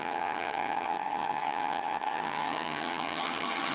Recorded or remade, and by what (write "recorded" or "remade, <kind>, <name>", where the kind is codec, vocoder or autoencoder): remade, vocoder, HiFi-GAN